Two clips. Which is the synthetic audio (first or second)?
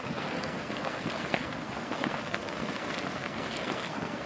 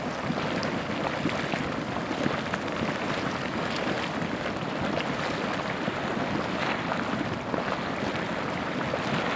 first